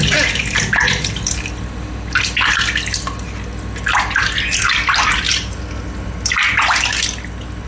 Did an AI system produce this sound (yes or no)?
no